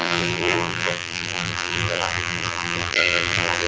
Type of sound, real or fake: fake